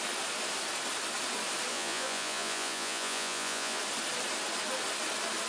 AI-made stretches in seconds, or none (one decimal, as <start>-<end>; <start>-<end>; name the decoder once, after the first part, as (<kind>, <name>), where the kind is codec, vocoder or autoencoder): 1.7-3.8 (vocoder, Vocos)